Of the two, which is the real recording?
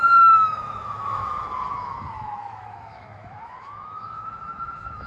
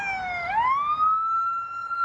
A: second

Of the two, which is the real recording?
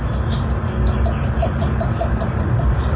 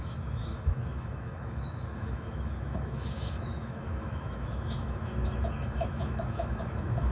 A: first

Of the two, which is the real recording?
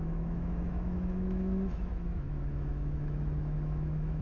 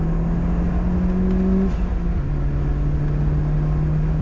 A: second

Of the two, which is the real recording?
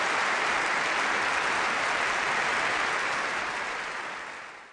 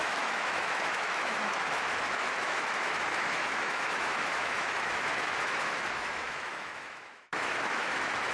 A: first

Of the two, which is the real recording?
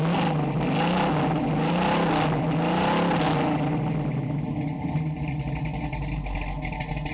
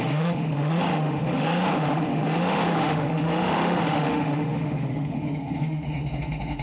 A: first